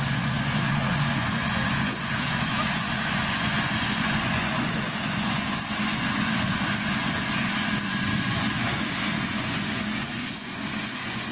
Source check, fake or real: fake